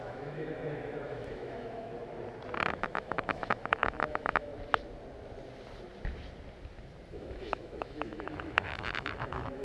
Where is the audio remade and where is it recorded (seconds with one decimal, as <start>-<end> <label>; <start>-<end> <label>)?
0.0-1.9 remade; 1.9-2.7 recorded; 2.7-4.5 remade; 4.5-7.1 recorded; 7.1-9.6 remade